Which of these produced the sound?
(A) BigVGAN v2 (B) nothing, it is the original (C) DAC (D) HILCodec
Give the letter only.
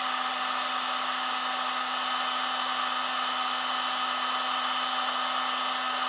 B